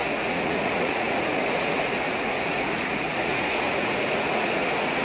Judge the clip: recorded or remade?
remade